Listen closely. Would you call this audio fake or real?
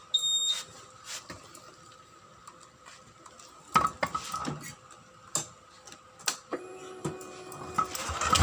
real